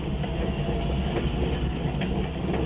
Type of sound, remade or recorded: recorded